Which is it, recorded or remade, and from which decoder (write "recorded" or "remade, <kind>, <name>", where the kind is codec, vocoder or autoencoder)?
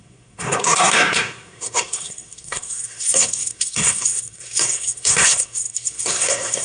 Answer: remade, codec, SNAC